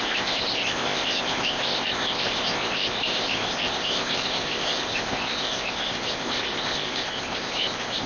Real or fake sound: fake